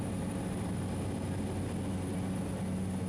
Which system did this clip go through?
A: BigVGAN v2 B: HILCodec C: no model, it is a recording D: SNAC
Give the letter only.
C